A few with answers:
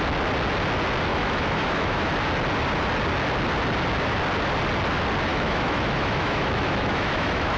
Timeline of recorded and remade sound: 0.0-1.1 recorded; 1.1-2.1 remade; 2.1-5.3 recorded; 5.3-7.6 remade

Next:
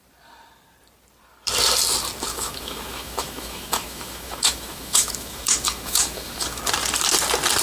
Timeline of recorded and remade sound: 0.0-2.3 recorded; 2.3-6.6 remade; 6.6-7.6 recorded